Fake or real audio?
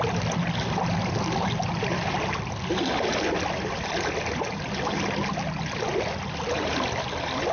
real